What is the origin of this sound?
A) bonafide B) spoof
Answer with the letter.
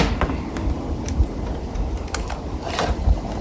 A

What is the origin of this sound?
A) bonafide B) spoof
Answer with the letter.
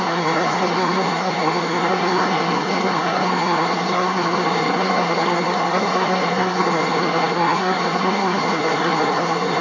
B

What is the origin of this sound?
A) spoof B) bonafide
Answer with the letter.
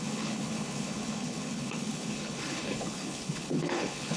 A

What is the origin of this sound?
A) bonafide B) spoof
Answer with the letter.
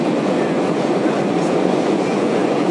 B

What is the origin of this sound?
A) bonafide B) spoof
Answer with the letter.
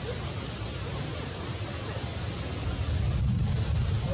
A